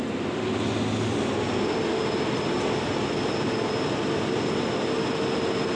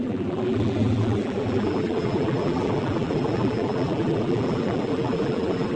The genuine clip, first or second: first